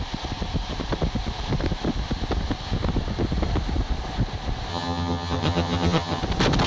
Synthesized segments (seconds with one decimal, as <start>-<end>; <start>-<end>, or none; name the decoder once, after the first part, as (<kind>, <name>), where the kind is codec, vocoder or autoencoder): 4.7-6.2 (vocoder, HiFi-GAN)